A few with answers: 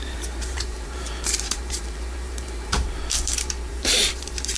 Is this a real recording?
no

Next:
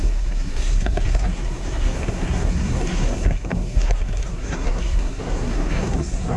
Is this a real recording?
no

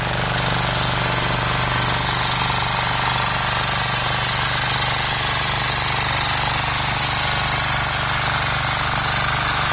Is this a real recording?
yes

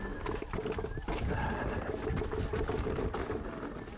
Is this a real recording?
yes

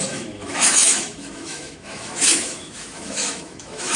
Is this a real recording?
no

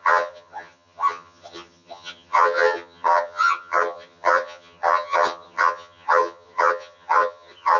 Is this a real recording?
no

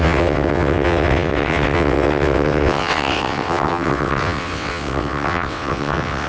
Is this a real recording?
no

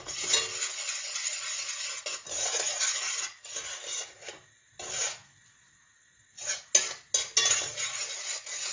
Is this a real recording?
yes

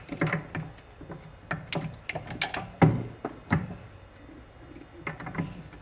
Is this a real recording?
yes